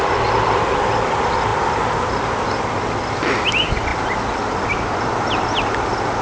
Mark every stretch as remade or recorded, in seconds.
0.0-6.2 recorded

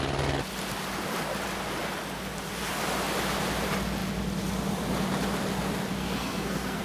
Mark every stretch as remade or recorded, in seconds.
0.0-6.0 recorded; 6.0-6.8 remade

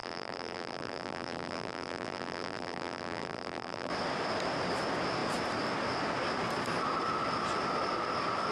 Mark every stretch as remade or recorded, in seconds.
0.0-3.9 remade; 3.9-8.5 recorded

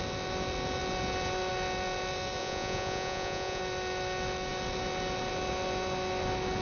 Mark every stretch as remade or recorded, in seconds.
0.0-2.4 recorded; 2.4-3.6 remade; 3.6-6.6 recorded

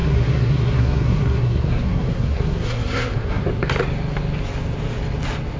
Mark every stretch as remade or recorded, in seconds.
0.0-3.4 remade; 3.4-5.6 recorded

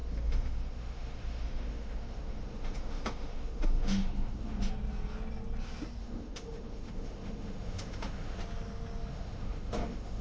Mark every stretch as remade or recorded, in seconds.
0.0-4.7 remade; 4.7-6.0 recorded; 6.0-8.4 remade; 8.4-9.1 recorded; 9.1-10.2 remade

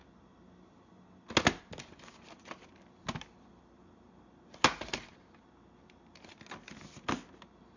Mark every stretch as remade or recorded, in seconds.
0.0-7.8 recorded